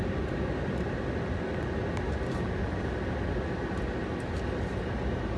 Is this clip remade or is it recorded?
recorded